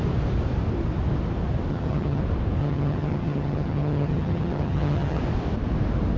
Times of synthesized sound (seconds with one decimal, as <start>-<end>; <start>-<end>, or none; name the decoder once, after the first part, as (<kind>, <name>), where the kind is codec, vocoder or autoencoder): 1.7-2.2 (vocoder, HiFi-GAN); 2.6-5.2

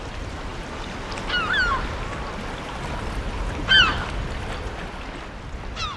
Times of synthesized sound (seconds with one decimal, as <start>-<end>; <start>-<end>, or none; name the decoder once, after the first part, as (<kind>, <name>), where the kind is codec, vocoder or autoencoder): none

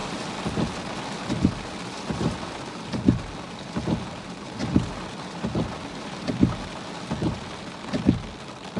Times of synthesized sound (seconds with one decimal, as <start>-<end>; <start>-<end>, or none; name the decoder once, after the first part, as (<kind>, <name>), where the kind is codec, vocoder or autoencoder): none

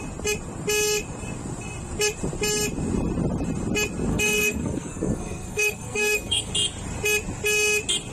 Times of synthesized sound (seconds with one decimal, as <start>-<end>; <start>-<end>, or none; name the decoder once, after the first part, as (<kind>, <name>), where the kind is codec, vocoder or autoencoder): 4.1-6.5 (codec, SNAC)

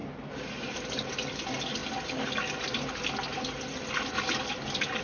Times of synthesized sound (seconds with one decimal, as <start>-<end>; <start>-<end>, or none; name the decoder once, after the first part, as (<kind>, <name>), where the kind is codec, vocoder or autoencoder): none